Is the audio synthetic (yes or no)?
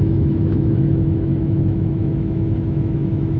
yes